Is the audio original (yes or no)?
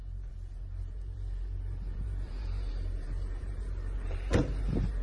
no